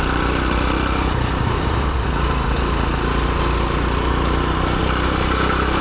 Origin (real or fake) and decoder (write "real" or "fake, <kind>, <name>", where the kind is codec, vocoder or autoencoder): real